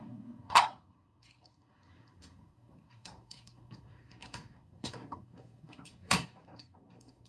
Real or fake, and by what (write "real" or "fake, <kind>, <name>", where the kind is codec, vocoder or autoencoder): fake, codec, SNAC